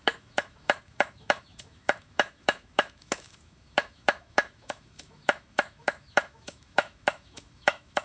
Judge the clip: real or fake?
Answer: fake